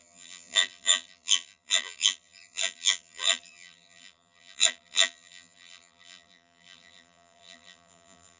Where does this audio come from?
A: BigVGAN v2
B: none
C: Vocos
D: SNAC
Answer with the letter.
A